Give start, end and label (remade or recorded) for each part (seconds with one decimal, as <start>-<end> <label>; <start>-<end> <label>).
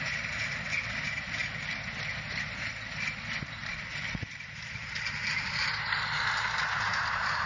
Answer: 0.0-3.6 recorded; 3.6-5.5 remade; 5.5-6.9 recorded; 6.9-7.5 remade